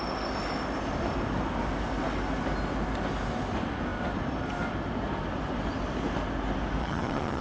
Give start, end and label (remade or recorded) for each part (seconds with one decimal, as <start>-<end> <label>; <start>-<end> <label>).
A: 0.0-6.8 recorded; 6.8-7.4 remade